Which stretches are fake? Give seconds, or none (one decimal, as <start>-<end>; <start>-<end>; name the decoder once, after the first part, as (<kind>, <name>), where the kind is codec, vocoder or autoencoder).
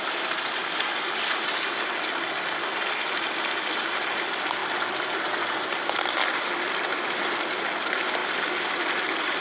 none